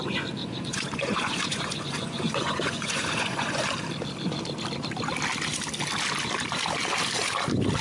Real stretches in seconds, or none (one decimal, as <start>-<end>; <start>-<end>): 0.0-0.4; 3.7-7.8

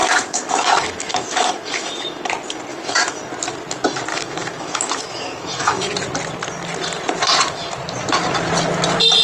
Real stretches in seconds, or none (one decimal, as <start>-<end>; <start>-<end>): 2.3-2.7; 3.2-4.1; 5.9-9.2